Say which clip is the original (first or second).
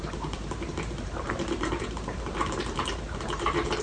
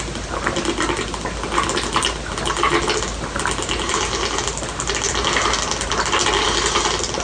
second